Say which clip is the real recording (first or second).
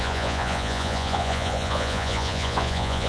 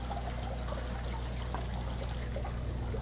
second